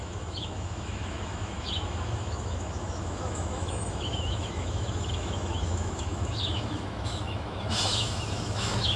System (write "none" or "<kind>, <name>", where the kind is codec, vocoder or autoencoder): autoencoder, DAC-VAE